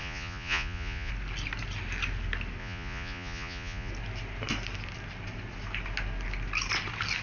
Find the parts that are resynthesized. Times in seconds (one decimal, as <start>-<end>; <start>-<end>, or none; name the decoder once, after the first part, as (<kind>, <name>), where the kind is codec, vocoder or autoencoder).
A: 0.0-1.1 (vocoder, Vocos); 2.6-3.9